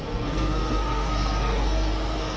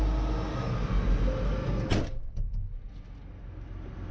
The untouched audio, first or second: second